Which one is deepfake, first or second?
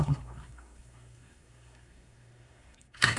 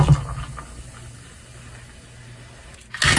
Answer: first